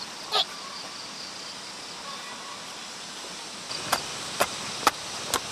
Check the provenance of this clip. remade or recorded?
recorded